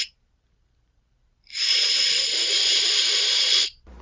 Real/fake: fake